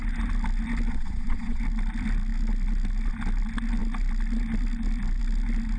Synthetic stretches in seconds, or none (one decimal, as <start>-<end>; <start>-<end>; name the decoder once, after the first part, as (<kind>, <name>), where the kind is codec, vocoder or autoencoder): 0.9-1.6 (vocoder, Vocos)